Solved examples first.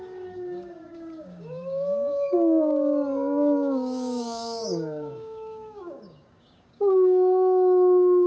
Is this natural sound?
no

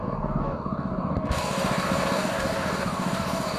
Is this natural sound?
no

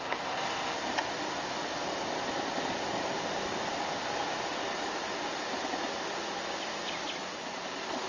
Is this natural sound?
yes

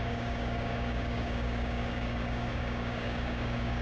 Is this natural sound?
no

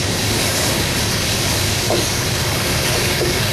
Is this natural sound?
no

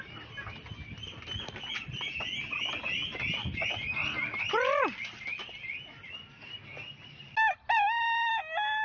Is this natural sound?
yes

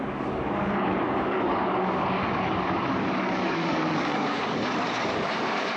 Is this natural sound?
no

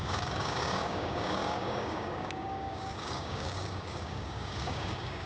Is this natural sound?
no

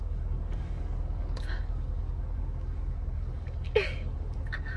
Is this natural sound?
no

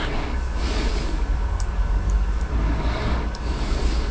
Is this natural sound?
no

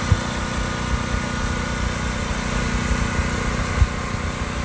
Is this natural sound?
yes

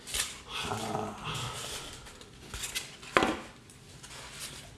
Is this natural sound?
yes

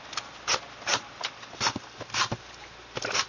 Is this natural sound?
yes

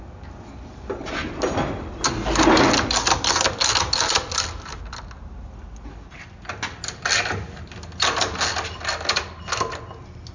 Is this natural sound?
yes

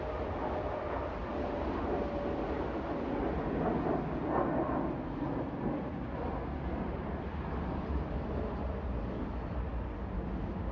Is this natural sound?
yes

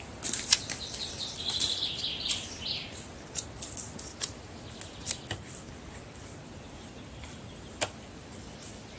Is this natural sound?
yes